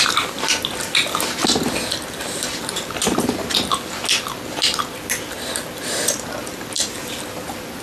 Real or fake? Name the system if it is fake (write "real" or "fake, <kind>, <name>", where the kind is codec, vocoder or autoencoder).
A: real